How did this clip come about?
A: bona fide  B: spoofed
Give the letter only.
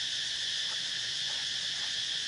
B